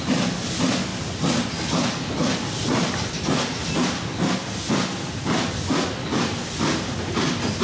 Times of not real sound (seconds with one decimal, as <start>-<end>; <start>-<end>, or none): none